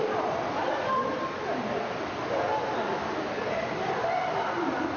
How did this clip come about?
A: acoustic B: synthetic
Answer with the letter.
B